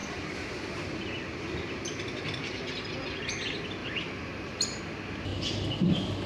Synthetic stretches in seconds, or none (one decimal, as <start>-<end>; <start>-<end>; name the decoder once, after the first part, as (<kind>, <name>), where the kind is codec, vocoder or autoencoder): 3.8-4.8 (vocoder, BigVGAN v2); 5.3-6.3